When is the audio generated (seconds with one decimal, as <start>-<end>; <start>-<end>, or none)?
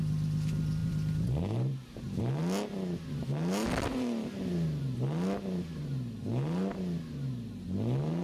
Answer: 0.8-2.2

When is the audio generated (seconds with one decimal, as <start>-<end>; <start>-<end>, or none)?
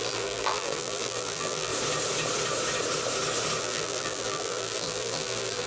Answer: 0.0-1.7; 3.6-5.7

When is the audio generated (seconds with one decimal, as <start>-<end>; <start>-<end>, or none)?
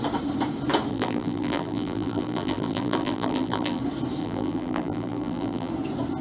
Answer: 0.9-3.8; 4.2-5.7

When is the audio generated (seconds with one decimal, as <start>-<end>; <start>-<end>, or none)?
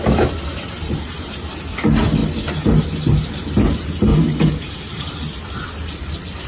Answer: 4.1-6.5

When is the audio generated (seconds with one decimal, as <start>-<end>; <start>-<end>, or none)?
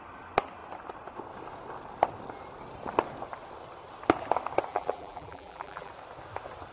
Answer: 4.7-5.9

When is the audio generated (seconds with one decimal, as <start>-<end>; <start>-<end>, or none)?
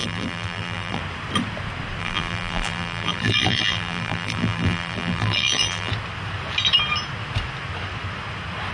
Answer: 0.0-1.0; 2.0-5.9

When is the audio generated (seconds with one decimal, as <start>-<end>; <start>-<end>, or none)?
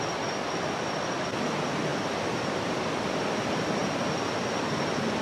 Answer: 0.0-5.2